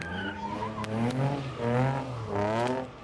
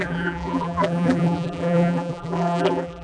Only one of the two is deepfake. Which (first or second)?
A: second